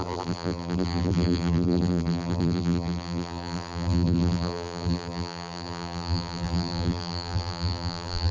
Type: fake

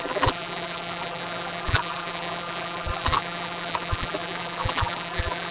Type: fake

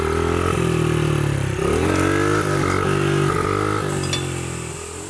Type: real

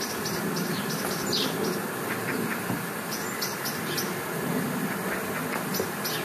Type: real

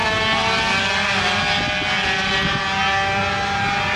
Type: real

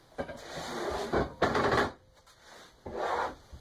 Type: fake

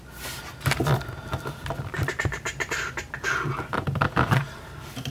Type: real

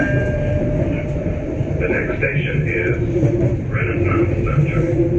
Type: fake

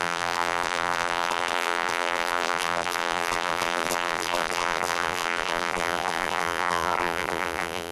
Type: fake